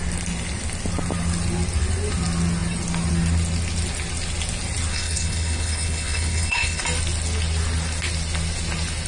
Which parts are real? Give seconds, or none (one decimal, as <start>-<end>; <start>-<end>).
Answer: 0.0-4.9; 6.8-9.1